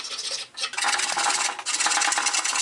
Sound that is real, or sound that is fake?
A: real